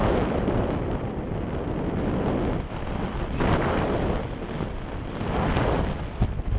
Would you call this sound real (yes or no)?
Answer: yes